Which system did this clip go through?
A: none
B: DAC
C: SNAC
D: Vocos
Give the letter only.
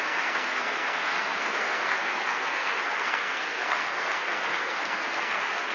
C